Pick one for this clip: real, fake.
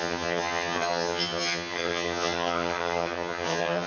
fake